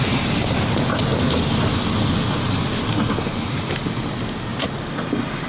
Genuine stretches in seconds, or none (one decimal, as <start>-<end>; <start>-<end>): 0.0-5.5